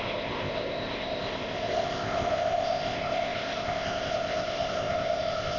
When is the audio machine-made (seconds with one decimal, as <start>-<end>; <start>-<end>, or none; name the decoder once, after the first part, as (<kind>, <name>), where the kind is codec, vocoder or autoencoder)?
0.0-5.6 (codec, ZipCodec)